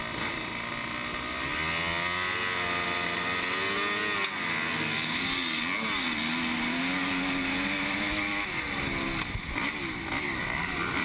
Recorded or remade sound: recorded